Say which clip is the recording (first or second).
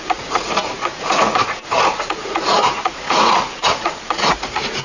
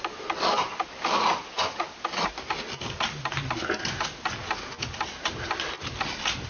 second